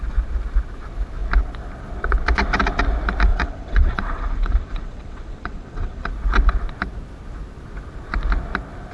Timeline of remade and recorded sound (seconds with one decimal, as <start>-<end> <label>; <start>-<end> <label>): 0.0-3.3 recorded; 3.3-6.1 remade; 6.1-8.9 recorded